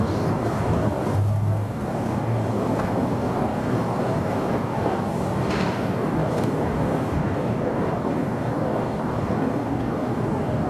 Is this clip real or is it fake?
fake